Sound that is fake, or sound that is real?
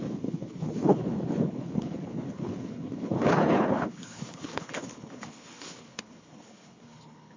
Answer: fake